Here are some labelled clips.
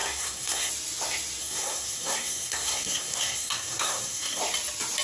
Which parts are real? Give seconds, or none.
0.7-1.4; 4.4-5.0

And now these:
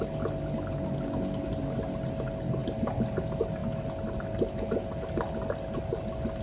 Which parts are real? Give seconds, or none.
0.0-6.4